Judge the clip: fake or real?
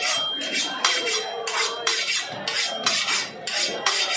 real